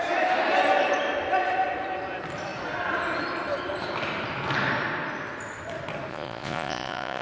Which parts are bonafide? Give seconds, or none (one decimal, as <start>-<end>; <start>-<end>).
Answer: 0.0-6.1